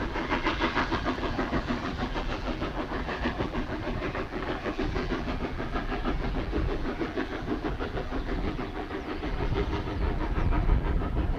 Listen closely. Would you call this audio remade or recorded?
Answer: remade